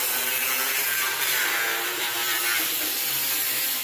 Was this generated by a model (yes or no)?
yes